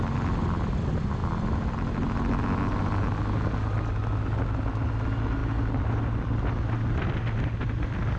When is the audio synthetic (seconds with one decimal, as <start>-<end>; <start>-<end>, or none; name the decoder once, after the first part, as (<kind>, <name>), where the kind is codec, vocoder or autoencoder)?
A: 1.2-1.7 (vocoder, BigVGAN v2); 5.4-5.9